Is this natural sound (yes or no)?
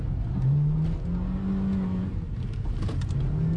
yes